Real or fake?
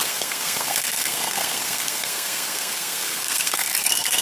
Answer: fake